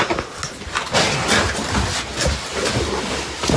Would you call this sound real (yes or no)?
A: yes